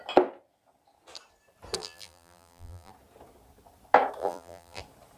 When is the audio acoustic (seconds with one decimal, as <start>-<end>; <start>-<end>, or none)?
0.0-1.8; 2.9-4.2; 4.8-5.2